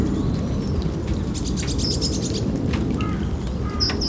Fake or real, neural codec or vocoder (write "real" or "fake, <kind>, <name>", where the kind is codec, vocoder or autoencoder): real